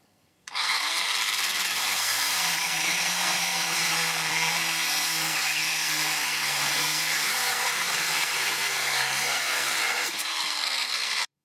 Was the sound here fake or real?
fake